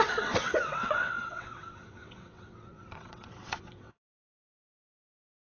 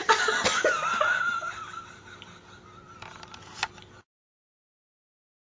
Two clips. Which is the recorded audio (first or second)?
second